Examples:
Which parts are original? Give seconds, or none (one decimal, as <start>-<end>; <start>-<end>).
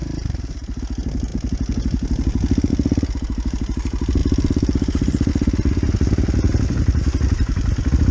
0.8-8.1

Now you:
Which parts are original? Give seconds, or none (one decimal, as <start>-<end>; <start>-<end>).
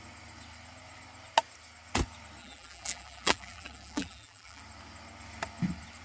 0.0-2.4; 4.6-6.0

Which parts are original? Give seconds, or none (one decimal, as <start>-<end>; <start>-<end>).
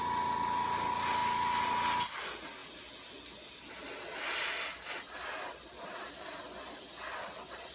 0.0-7.7